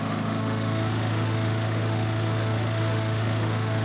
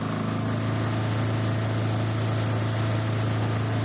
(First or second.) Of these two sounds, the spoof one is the first